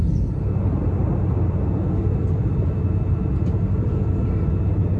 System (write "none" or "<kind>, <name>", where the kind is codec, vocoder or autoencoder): none